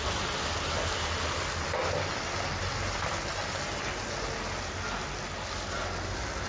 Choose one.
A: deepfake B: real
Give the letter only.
B